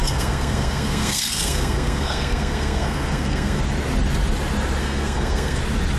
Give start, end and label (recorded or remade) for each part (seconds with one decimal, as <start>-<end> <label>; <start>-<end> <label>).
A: 0.0-3.6 remade; 3.6-4.8 recorded; 4.8-5.6 remade; 5.6-6.0 recorded